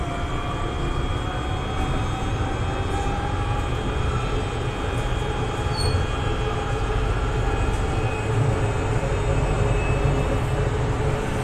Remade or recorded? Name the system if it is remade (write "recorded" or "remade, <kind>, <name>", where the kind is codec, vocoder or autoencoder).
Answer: recorded